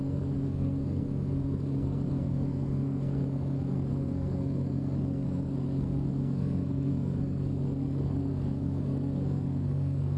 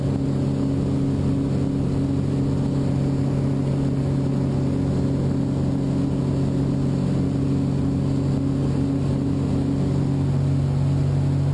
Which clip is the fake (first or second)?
first